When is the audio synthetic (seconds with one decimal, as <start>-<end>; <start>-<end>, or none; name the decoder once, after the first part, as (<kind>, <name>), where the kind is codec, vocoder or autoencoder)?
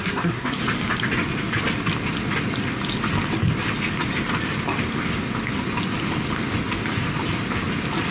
0.0-0.6 (codec, SNAC)